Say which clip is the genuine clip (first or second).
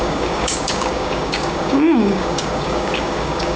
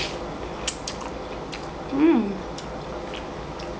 second